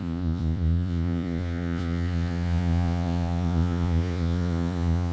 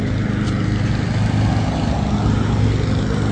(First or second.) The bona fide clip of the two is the second